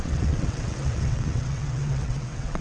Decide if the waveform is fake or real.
fake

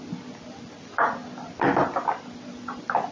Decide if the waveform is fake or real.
real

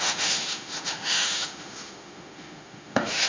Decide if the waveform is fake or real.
fake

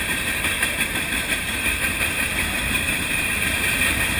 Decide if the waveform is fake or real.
fake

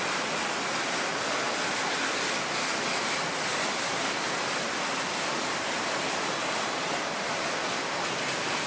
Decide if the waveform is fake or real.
real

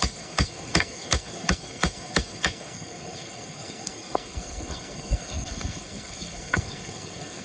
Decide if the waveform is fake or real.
fake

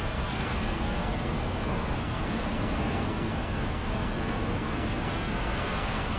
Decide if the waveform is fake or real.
fake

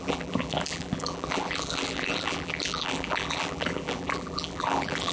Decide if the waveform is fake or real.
fake